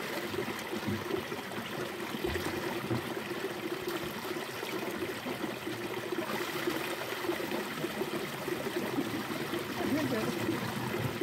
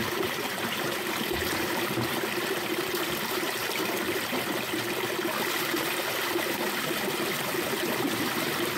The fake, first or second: second